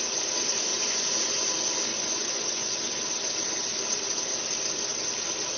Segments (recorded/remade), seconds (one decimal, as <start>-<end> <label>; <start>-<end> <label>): 0.0-0.7 recorded; 0.7-1.5 remade; 1.5-1.9 recorded; 1.9-3.0 remade; 3.0-5.6 recorded